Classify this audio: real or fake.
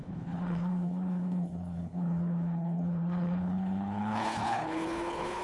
fake